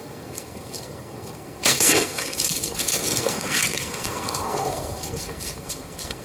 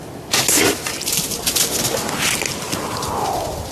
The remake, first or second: first